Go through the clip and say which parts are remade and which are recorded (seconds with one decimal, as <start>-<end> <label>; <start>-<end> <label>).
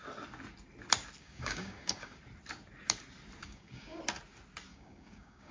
0.0-1.2 recorded; 1.2-2.2 remade; 2.2-3.4 recorded; 3.4-4.0 remade; 4.0-4.7 recorded; 4.7-5.5 remade